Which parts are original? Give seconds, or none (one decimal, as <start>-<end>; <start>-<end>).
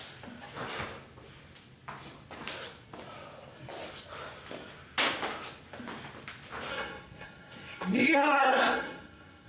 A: 0.0-6.7